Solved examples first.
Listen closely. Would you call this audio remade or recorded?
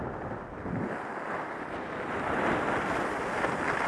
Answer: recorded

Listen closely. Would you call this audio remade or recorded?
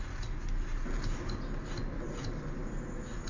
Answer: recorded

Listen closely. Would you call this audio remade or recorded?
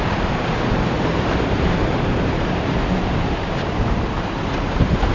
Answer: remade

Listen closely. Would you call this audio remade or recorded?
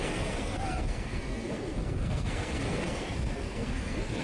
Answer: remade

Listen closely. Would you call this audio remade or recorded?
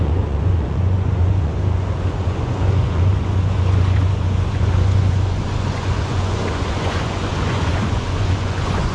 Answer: remade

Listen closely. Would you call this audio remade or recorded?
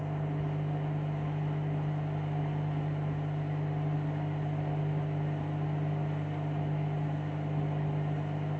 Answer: recorded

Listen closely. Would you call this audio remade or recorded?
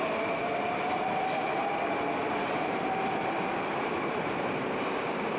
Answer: recorded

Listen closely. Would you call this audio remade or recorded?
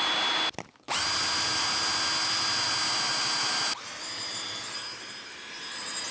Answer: recorded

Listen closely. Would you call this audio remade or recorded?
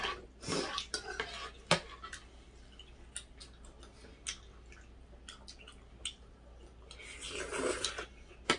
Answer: recorded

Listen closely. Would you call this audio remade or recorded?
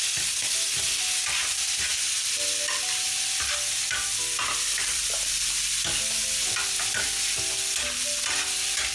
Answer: recorded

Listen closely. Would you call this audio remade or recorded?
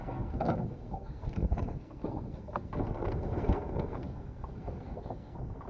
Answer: remade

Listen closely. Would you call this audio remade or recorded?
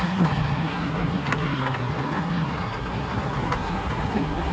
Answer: remade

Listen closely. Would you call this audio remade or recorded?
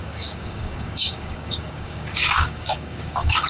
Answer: remade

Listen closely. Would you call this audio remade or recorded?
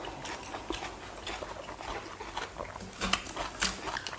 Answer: recorded